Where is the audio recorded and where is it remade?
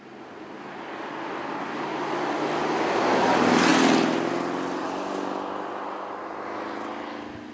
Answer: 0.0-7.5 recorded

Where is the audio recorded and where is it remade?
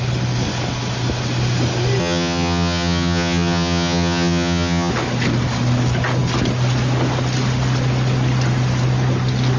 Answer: 0.0-2.0 recorded; 2.0-4.9 remade; 4.9-9.6 recorded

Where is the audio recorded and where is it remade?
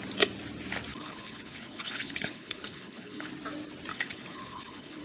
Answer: 0.0-0.9 recorded; 0.9-3.3 remade; 3.3-3.9 recorded; 3.9-5.0 remade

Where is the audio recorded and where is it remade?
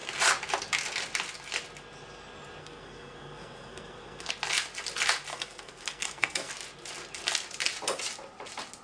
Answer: 0.0-2.6 recorded; 2.6-4.3 remade; 4.3-5.3 recorded; 5.3-6.5 remade; 6.5-8.8 recorded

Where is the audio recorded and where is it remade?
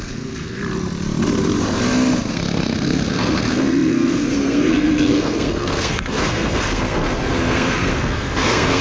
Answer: 0.0-0.6 remade; 0.6-2.3 recorded; 2.3-8.8 remade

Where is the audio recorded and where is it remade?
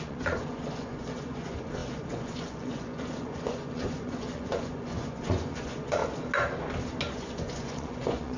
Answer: 0.0-6.0 remade; 6.0-7.1 recorded; 7.1-8.4 remade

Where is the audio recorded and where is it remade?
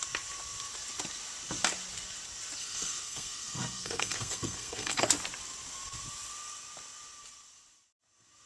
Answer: 0.0-2.6 recorded; 2.6-5.1 remade; 5.1-8.5 recorded